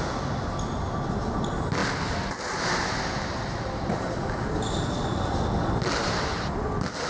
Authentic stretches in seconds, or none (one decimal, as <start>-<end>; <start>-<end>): 0.0-7.1

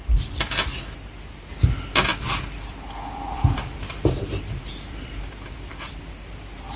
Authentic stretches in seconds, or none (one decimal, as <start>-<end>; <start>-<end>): 0.0-2.1; 6.0-6.8

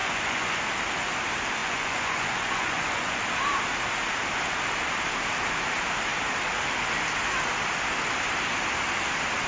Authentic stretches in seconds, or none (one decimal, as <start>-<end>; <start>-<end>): 0.6-1.6; 3.2-9.5

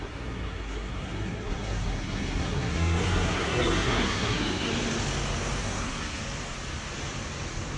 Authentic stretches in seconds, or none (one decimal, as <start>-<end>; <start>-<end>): 4.7-5.6; 6.2-7.8

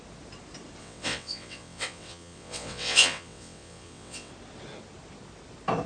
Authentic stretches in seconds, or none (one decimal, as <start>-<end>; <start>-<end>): 0.0-0.8; 4.3-5.9

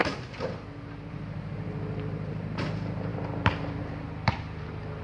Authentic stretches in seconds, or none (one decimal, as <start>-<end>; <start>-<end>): 0.0-1.1